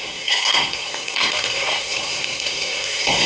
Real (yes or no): no